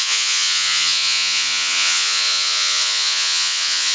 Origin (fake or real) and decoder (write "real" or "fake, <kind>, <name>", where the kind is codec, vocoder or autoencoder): fake, vocoder, Vocos